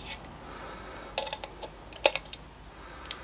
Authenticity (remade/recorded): recorded